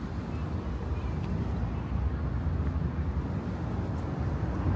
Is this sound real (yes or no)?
yes